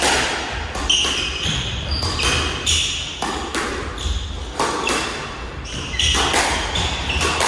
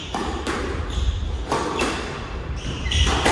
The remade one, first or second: second